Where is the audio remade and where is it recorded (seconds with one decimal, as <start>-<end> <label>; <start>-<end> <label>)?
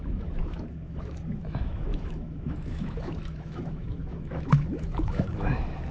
0.0-5.9 remade